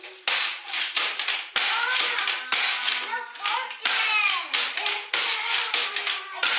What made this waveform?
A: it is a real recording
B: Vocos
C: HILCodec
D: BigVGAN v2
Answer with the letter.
A